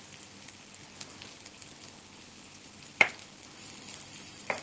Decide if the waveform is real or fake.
real